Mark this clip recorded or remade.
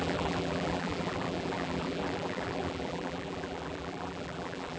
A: remade